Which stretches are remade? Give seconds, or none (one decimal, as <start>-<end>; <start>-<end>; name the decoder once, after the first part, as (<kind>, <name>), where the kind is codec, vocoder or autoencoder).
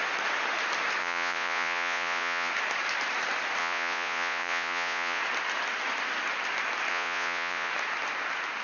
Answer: 1.0-2.5 (vocoder, Vocos); 3.6-5.2; 6.9-7.7